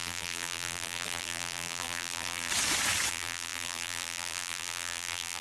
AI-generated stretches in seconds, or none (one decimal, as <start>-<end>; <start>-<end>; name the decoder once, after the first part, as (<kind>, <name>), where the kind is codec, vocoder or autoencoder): 0.0-2.5 (vocoder, BigVGAN v2); 3.1-5.4